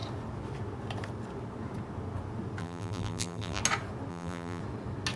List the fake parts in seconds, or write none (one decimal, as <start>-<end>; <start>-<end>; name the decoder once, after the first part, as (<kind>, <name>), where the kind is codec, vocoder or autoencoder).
2.6-3.6 (vocoder, BigVGAN v2); 4.1-4.6